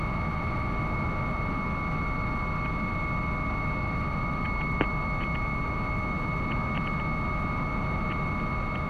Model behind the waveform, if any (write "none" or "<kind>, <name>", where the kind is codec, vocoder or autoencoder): none